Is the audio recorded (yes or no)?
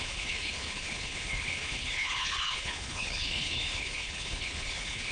no